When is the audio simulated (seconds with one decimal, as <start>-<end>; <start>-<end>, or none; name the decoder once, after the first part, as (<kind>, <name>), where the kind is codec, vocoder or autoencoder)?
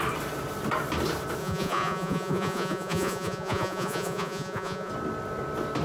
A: 1.4-4.9 (vocoder, Vocos)